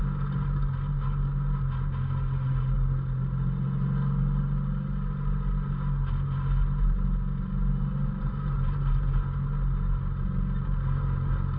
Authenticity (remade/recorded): recorded